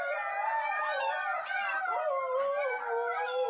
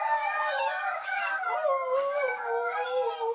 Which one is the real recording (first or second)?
first